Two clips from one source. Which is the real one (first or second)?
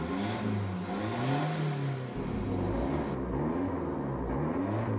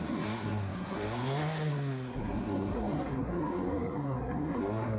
first